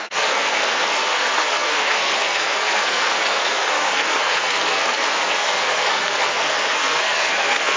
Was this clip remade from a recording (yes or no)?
yes